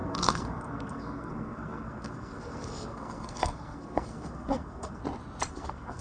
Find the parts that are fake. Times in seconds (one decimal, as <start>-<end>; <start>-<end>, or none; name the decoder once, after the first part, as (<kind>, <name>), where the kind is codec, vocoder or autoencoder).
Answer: 0.0-5.0 (codec, SNAC); 5.5-6.0